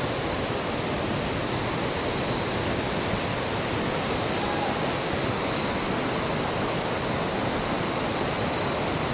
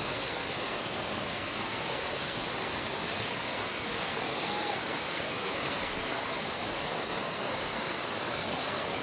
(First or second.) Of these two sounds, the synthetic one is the second